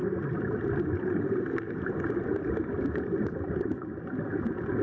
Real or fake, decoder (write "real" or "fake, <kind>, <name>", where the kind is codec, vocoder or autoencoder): real